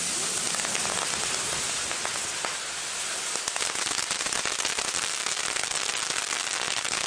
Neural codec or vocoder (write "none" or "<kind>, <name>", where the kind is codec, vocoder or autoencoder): none